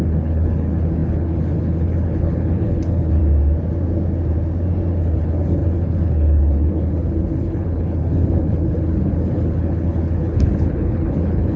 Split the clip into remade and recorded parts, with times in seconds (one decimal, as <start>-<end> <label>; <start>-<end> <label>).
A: 0.0-3.2 remade; 3.2-4.9 recorded; 4.9-11.6 remade